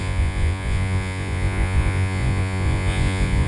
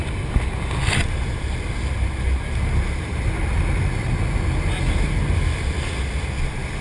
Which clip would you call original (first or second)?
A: second